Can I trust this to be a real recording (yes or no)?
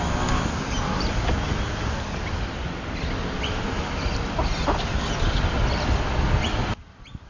yes